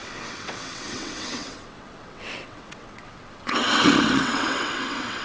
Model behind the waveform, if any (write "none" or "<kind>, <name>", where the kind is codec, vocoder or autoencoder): vocoder, WaveNeXt